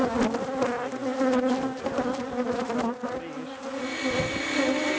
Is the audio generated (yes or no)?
no